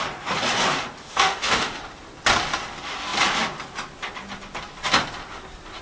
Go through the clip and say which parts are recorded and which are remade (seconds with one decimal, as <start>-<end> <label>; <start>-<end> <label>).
0.0-1.1 recorded; 1.1-1.8 remade; 1.8-5.8 recorded